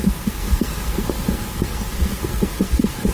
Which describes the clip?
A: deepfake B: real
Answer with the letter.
A